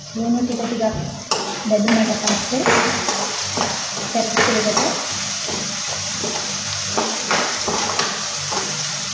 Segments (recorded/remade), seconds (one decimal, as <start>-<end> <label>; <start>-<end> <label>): 0.0-6.2 remade; 6.2-7.0 recorded; 7.0-9.1 remade